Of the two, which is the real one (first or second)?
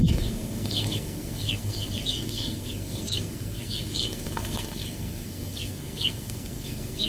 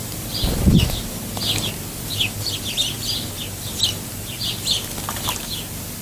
second